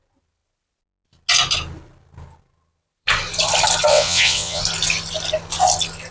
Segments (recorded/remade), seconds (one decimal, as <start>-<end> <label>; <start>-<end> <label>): 0.0-3.9 recorded; 3.9-4.6 remade; 4.6-6.1 recorded